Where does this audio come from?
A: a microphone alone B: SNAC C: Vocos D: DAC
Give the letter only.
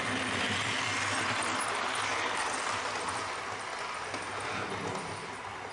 A